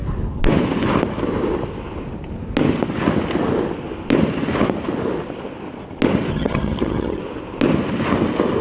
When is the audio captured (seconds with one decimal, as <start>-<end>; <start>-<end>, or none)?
0.0-6.3; 7.2-8.6

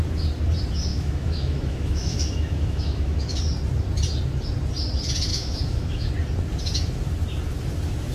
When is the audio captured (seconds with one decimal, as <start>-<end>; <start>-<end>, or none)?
0.0-0.9; 3.4-5.3; 6.1-8.1